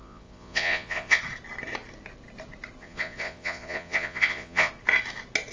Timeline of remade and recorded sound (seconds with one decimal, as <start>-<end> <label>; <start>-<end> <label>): 0.0-1.2 remade; 1.2-2.8 recorded; 2.8-4.7 remade; 4.7-5.5 recorded